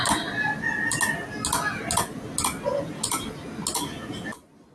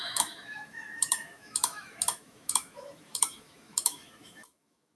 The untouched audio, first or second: first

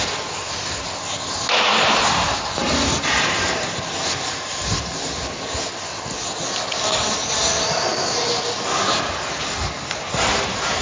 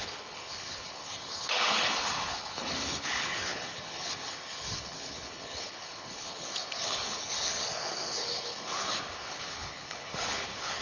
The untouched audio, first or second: first